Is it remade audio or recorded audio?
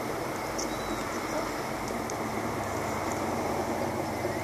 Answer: recorded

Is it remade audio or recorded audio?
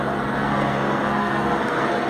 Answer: remade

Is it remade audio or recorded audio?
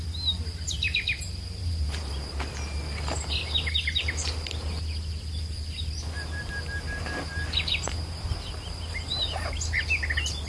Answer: recorded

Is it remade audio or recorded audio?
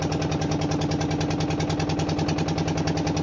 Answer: recorded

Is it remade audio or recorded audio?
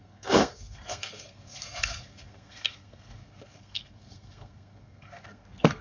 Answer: remade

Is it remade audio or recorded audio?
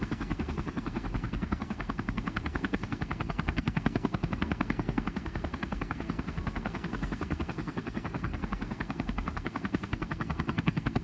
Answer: remade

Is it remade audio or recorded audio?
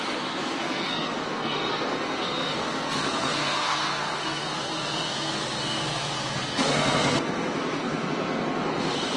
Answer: remade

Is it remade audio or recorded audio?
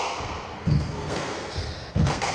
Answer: remade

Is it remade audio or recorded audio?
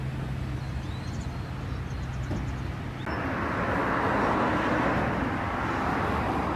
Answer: recorded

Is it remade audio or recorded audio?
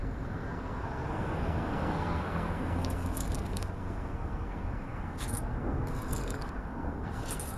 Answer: remade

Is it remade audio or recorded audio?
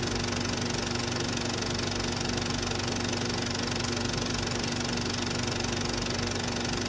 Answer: recorded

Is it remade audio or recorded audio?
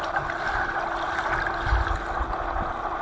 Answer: recorded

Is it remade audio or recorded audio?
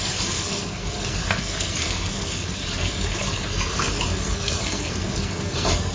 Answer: remade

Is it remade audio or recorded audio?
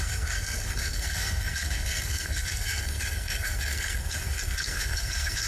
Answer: remade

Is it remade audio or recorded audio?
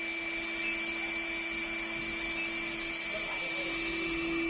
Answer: recorded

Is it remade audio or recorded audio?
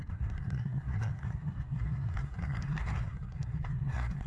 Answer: remade